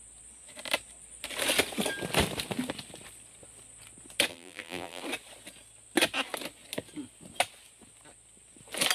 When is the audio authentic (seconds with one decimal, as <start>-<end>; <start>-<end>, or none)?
0.0-4.3; 5.0-8.9